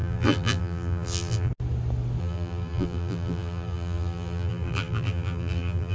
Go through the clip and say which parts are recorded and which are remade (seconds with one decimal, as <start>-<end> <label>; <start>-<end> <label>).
0.0-1.5 remade; 1.5-2.2 recorded; 2.2-5.9 remade